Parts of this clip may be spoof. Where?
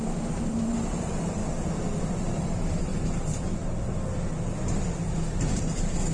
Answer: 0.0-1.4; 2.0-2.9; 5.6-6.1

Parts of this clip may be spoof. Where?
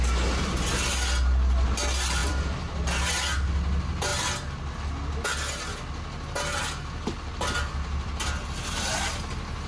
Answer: 2.2-3.1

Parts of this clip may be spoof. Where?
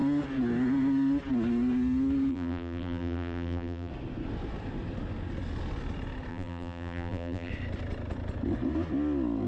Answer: 2.3-3.9; 6.3-7.5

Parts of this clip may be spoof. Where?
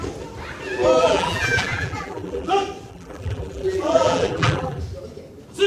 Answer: 1.0-2.5; 2.9-4.8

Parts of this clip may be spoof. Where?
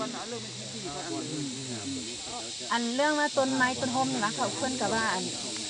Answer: none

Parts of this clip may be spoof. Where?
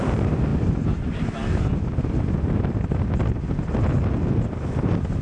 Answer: none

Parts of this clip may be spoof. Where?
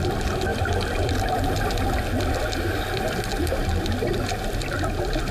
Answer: none